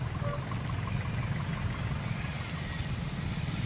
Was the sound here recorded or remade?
recorded